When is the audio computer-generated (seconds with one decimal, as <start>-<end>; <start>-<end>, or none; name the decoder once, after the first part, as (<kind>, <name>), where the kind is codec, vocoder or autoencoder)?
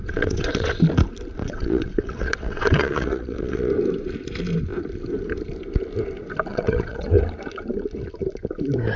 0.0-0.8 (vocoder, WaveNeXt); 1.4-3.7; 6.5-7.2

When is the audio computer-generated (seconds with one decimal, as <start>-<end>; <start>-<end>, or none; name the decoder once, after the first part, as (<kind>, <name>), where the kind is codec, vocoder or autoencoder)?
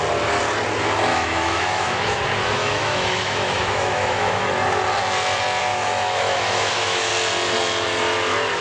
1.1-2.2 (autoencoder, DAC-VAE); 2.6-4.5; 5.7-7.1